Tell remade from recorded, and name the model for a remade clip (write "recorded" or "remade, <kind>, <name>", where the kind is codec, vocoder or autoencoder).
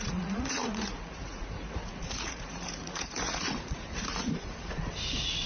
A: remade, vocoder, Vocos